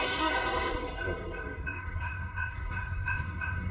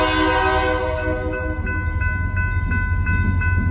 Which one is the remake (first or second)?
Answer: first